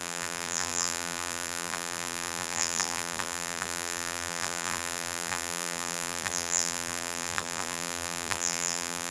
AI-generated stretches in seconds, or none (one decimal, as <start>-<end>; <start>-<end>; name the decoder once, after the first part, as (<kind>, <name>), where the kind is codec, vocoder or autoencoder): 0.0-9.1 (vocoder, BigVGAN v2)

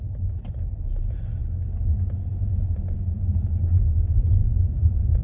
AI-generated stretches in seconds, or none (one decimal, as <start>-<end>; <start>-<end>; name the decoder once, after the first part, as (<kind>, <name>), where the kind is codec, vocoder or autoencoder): 0.0-5.2 (vocoder, BigVGAN v2)

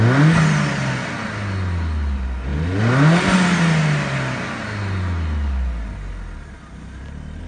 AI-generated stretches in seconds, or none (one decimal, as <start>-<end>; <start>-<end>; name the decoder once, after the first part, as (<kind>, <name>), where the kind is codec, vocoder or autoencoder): none